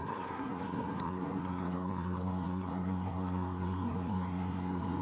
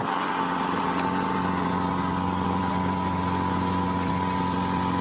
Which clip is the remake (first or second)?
first